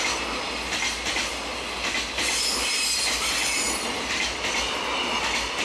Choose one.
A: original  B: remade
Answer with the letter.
A